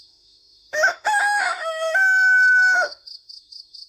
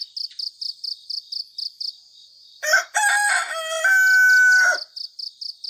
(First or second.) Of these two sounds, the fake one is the first